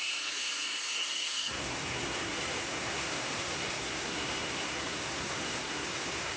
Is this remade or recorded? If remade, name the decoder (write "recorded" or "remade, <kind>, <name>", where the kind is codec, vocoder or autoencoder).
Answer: remade, codec, SNAC